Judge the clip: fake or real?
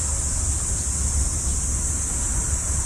real